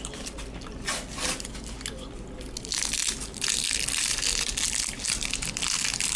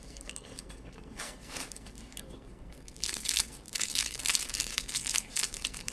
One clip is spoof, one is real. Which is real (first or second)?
first